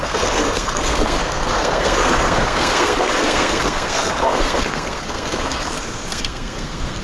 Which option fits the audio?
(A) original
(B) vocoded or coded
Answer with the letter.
B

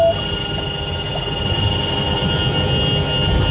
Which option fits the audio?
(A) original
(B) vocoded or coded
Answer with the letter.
A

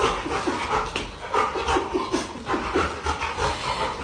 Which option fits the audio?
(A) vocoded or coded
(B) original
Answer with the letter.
B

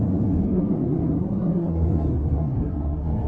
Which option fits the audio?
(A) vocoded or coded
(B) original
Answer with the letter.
A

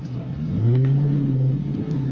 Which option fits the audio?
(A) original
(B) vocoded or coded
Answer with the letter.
B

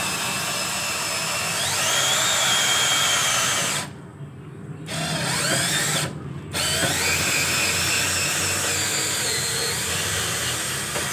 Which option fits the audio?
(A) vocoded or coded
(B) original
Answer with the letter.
B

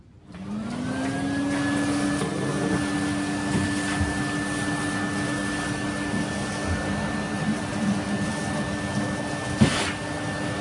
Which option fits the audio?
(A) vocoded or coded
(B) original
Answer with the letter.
B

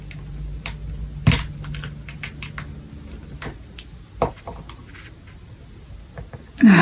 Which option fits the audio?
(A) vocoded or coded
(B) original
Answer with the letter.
B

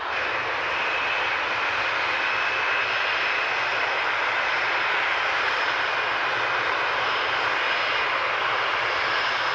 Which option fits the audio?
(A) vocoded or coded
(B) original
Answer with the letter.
B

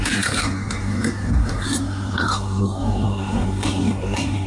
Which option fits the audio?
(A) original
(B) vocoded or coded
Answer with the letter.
B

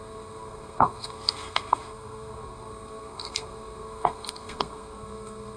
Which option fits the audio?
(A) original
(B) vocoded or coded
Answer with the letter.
B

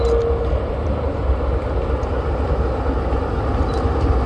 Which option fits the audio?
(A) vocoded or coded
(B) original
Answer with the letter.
B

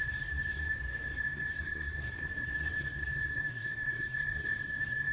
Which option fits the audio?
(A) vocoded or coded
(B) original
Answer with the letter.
A